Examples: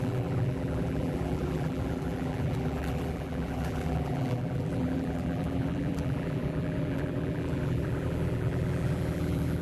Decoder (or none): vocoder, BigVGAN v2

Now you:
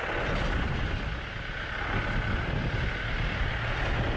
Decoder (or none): none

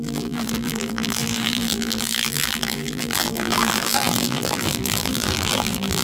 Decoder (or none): vocoder, BigVGAN v2